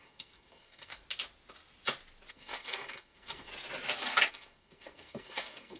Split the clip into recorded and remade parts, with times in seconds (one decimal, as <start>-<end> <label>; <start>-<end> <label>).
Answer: 0.0-0.9 remade; 0.9-2.3 recorded; 2.3-3.5 remade; 3.5-4.3 recorded; 4.3-5.8 remade